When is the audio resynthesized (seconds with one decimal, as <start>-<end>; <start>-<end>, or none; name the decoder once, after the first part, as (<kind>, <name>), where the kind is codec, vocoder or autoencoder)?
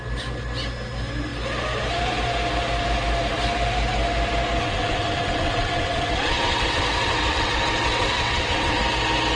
4.6-8.8 (vocoder, WaveNeXt)